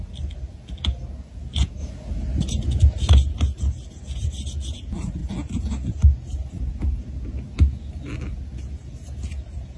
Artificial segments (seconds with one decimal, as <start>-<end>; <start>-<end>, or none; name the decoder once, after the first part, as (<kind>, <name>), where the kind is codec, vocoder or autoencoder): none